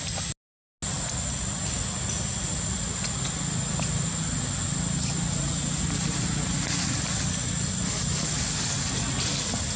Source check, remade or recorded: recorded